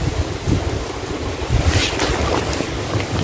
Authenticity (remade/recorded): recorded